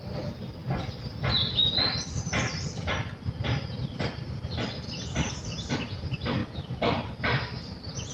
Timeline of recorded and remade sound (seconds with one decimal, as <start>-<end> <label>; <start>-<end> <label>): 0.0-0.6 remade; 0.6-5.3 recorded; 5.3-8.1 remade